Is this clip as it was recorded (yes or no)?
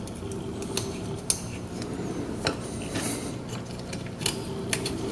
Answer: yes